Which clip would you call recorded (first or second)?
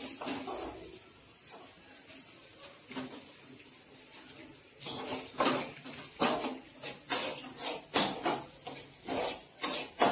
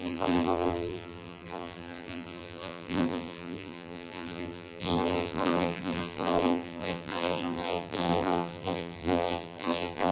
first